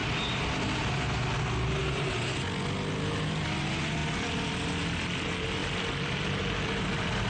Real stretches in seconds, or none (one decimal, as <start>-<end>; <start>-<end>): 0.0-4.0; 4.8-5.6; 6.4-7.3